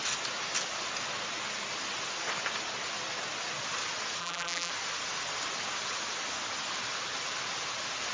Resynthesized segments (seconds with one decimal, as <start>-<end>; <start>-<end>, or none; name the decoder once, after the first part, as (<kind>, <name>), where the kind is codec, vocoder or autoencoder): 4.2-4.7 (vocoder, BigVGAN v2)